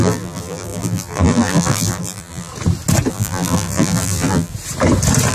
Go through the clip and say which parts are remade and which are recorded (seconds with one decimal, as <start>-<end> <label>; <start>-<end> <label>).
0.0-2.5 remade; 2.5-3.1 recorded; 3.1-4.5 remade; 4.5-5.3 recorded